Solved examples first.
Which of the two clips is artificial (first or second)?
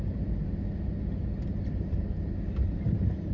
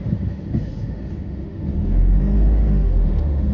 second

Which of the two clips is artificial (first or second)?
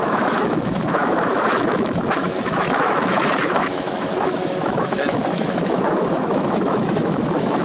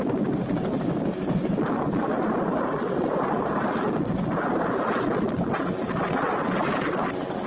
first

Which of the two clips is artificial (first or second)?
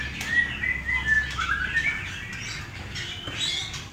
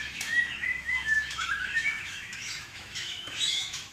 second